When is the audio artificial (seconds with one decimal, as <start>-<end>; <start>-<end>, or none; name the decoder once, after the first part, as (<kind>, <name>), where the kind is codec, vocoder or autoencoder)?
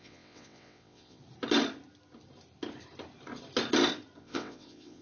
0.0-1.2 (vocoder, WaveNeXt); 4.2-5.0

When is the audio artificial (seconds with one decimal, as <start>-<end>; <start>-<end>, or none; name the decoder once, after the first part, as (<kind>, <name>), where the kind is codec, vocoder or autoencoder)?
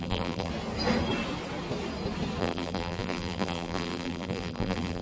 0.0-0.5 (vocoder, BigVGAN v2); 2.4-5.0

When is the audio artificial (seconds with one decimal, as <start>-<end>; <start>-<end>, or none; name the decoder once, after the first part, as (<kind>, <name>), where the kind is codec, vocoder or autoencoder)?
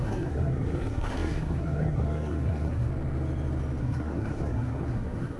0.0-2.9 (codec, SNAC); 3.8-5.4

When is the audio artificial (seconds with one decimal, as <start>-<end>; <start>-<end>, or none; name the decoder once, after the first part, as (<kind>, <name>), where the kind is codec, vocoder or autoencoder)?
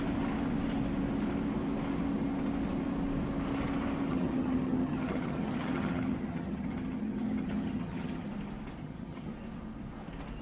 4.1-8.3 (vocoder, HiFi-GAN); 8.8-9.3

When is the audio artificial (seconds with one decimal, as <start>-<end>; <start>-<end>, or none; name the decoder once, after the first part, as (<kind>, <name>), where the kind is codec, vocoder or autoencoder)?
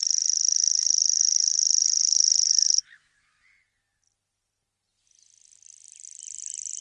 none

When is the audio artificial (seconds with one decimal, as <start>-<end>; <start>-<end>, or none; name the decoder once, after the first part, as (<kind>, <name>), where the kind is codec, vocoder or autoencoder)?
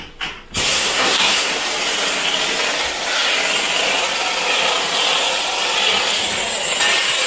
0.7-1.5 (codec, SNAC)